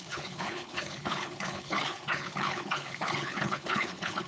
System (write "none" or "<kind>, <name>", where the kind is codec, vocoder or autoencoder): codec, HILCodec